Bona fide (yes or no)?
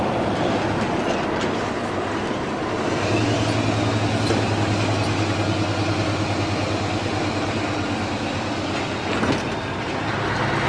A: yes